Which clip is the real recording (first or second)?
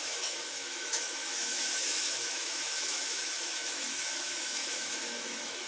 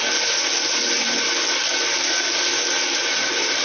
second